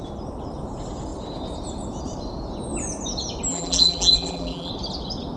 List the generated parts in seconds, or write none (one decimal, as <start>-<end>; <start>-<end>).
3.5-4.7